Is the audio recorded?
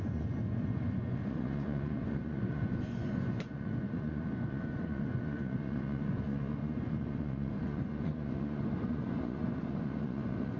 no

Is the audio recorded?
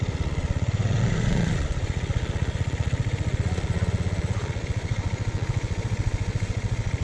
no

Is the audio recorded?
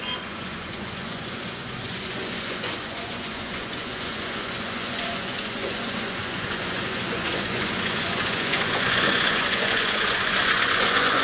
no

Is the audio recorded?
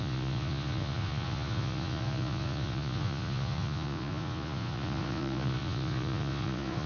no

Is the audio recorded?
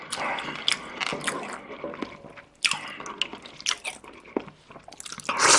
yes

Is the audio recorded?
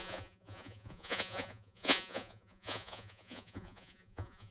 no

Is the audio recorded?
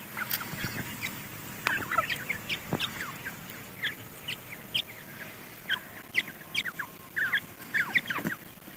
yes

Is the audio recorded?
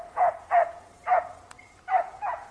no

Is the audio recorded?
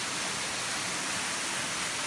yes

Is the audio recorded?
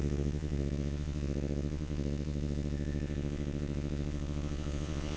no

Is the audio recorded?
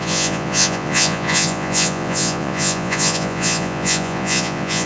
no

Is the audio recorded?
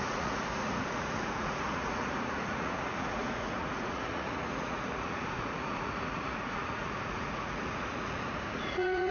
no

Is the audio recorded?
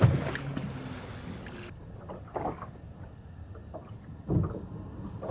yes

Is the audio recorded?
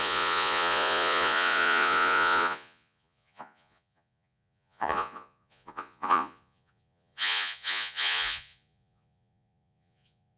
no